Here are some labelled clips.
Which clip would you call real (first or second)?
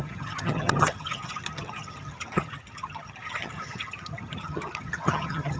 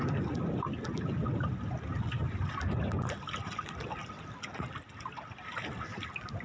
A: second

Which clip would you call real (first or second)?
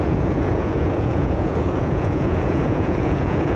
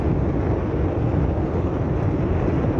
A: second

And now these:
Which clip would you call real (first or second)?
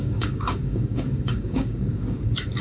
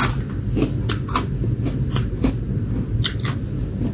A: second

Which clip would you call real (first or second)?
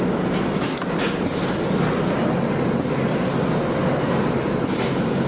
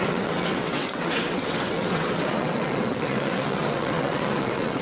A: first